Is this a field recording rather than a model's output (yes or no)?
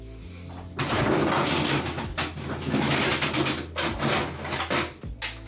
yes